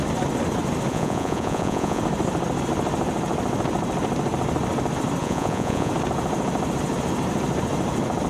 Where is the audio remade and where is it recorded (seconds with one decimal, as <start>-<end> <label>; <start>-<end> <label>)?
0.0-0.9 recorded; 0.9-2.0 remade; 2.0-5.2 recorded; 5.2-5.9 remade; 5.9-8.3 recorded